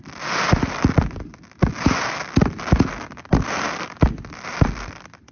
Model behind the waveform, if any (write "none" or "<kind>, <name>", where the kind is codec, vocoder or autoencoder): none